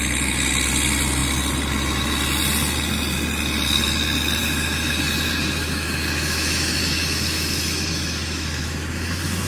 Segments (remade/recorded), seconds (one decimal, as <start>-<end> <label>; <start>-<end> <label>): 0.0-4.4 recorded; 4.4-9.5 remade